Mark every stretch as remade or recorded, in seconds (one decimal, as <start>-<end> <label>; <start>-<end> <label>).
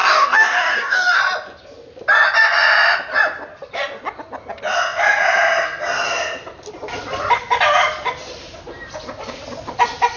0.0-1.2 remade; 1.2-10.2 recorded